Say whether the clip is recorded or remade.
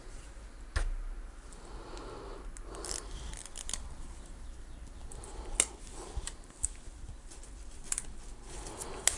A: recorded